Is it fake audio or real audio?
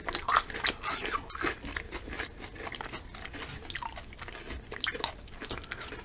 real